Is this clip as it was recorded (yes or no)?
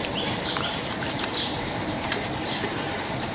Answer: no